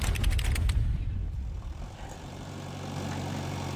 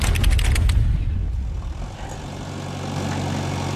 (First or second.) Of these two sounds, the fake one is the first